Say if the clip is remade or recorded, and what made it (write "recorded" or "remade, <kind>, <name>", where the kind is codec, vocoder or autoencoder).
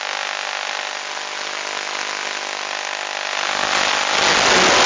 recorded